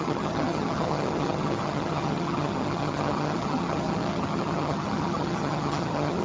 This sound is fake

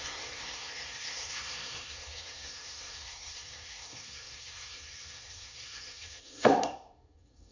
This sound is fake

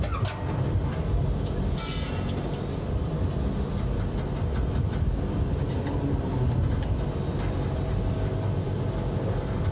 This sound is real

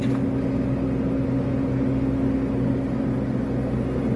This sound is real